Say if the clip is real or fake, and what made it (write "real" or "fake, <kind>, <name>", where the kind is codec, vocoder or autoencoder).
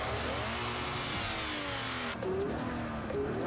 real